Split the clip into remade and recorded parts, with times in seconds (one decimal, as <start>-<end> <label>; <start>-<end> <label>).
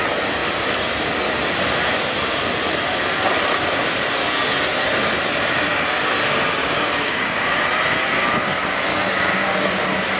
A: 0.0-6.6 recorded; 6.6-7.7 remade; 7.7-8.9 recorded; 8.9-9.7 remade; 9.7-10.2 recorded